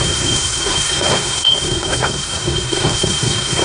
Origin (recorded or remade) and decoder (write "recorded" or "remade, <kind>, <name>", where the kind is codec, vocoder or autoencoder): remade, codec, SNAC